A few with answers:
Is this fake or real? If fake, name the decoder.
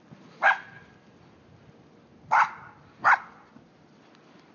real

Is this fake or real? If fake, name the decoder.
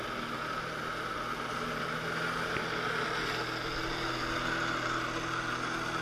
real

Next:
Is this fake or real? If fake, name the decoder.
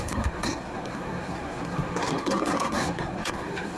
fake, codec, SNAC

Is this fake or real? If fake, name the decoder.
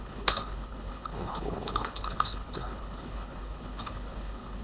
fake, codec, HILCodec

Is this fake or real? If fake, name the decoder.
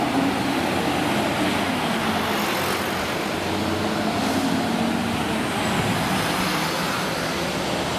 real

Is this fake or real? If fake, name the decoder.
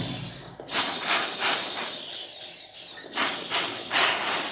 real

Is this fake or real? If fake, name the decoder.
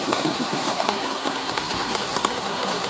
fake, codec, SNAC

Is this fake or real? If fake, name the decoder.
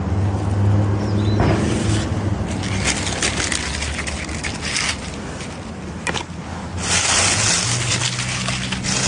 real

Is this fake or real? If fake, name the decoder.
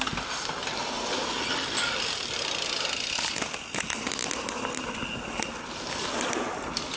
real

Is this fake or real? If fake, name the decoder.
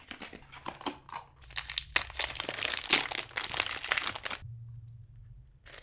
real